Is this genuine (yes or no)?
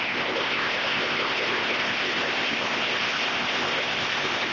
no